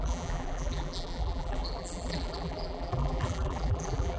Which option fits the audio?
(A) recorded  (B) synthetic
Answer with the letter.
B